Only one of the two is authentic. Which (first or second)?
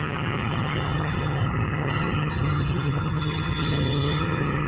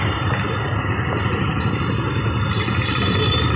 second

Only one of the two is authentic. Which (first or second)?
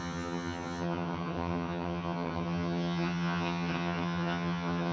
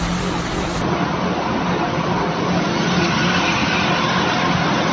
second